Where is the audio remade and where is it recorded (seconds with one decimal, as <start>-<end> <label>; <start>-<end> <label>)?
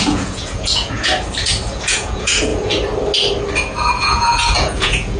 0.0-1.1 remade; 1.1-1.7 recorded; 1.7-2.5 remade; 2.5-3.9 recorded; 3.9-5.2 remade